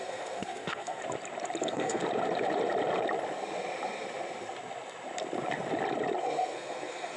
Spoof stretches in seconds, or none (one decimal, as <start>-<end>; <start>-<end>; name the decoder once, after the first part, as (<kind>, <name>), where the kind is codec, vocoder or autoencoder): 0.0-1.0 (codec, SNAC); 1.6-2.0; 6.2-7.2